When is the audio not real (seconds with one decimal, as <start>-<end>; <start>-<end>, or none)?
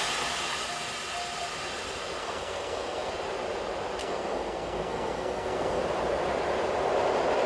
2.2-3.1; 4.0-5.8